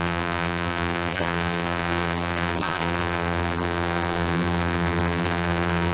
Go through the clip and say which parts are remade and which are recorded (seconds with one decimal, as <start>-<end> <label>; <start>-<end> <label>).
0.0-5.9 remade